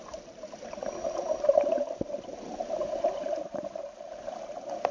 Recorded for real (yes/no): yes